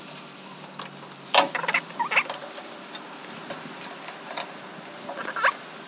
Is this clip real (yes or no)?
yes